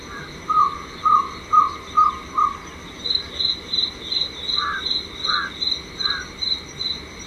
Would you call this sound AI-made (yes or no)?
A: yes